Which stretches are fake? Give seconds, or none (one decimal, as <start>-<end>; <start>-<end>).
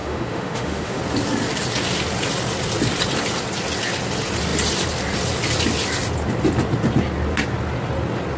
0.0-1.0